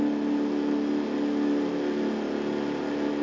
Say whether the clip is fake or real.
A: real